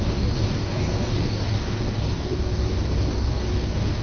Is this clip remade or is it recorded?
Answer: remade